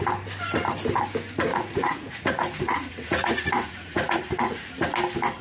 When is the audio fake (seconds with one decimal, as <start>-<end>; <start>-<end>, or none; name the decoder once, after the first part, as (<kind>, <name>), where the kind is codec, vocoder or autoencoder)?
1.5-4.7 (vocoder, Vocos)